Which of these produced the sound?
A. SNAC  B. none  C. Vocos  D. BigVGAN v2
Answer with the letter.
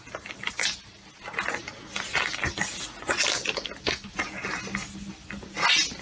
B